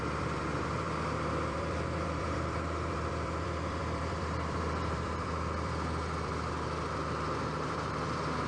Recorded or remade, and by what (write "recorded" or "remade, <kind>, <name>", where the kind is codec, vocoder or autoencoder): remade, vocoder, BigVGAN v2